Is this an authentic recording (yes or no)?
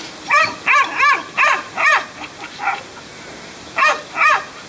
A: yes